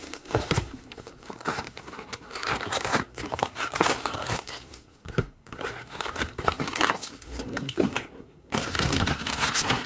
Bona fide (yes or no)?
no